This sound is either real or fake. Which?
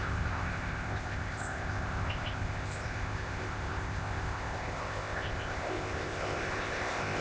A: fake